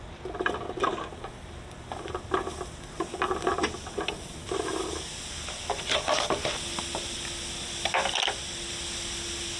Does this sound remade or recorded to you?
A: recorded